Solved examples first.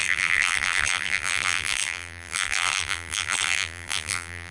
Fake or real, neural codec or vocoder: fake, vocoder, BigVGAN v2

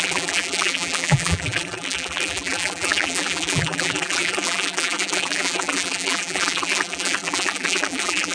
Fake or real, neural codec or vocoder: fake, vocoder, BigVGAN v2